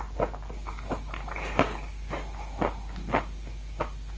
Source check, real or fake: real